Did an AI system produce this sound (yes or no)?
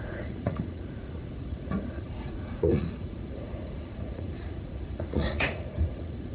yes